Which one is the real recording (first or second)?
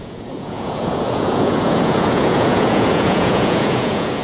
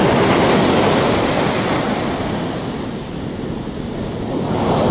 second